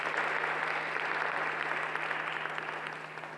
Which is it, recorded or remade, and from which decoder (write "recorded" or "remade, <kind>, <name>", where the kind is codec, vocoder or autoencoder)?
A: recorded